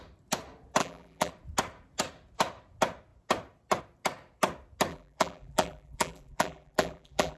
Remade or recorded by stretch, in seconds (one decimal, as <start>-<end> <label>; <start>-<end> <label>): 0.0-0.8 recorded; 0.8-1.3 remade; 1.3-4.9 recorded; 4.9-7.4 remade